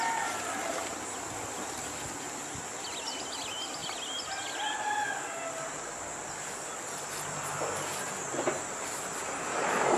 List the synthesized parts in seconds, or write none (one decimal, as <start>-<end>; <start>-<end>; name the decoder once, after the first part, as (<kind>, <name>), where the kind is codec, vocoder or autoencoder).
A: none